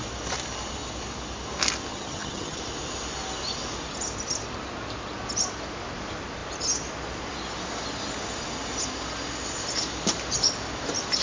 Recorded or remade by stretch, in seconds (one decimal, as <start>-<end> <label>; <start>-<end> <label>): 0.0-1.9 recorded; 1.9-2.6 remade; 2.6-11.2 recorded